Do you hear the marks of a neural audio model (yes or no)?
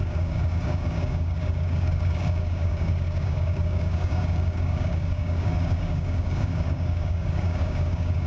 yes